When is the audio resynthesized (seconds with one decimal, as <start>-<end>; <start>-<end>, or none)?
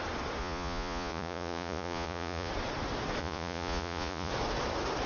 0.4-2.5; 3.2-4.3